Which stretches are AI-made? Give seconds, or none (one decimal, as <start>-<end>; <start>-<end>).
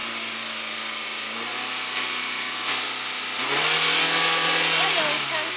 none